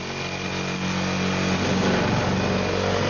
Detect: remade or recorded recorded